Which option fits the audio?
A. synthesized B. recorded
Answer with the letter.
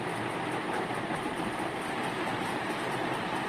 B